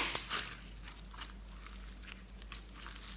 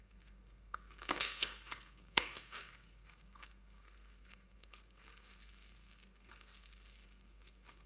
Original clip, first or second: first